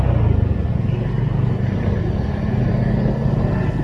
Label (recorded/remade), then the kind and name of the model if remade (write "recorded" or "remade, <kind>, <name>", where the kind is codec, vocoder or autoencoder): recorded